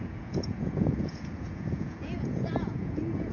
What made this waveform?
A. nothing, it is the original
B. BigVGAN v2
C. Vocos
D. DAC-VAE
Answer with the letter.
C